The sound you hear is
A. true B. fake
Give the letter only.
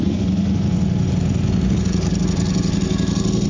A